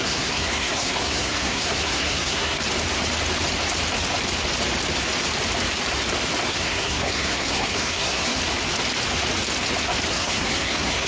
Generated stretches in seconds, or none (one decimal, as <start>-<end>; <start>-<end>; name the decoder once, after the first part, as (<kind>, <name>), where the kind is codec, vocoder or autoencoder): 0.0-2.6 (codec, SNAC); 6.5-8.4; 10.1-11.1